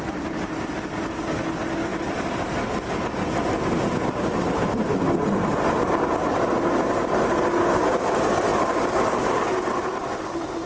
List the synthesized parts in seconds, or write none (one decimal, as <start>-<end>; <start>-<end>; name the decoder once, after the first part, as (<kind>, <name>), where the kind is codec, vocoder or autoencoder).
none